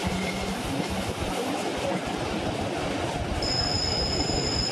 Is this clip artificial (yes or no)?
no